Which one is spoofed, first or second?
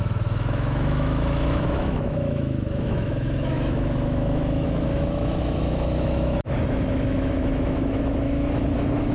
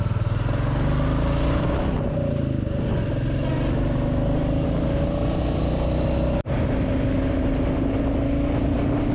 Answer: first